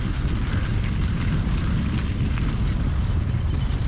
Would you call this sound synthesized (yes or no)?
no